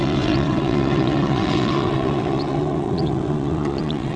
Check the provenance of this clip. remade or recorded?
remade